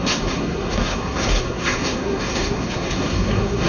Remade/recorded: remade